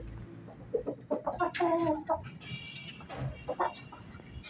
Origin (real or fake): real